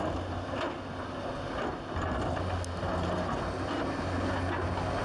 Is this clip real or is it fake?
real